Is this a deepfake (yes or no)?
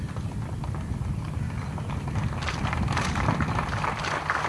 no